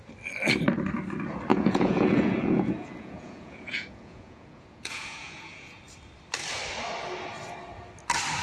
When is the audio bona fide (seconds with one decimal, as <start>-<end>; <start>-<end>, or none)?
0.0-1.5; 5.8-8.4